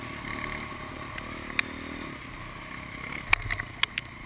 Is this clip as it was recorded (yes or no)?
yes